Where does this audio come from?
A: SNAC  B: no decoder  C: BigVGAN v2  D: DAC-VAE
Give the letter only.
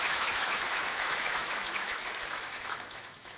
D